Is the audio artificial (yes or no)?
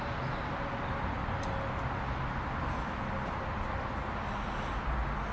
no